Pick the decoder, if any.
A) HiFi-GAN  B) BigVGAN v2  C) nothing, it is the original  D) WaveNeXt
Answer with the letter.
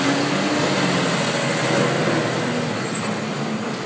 C